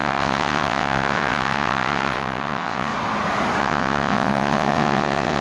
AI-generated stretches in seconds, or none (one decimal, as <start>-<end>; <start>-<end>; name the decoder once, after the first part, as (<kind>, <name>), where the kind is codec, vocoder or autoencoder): 0.0-2.9 (vocoder, WaveNeXt); 3.6-5.4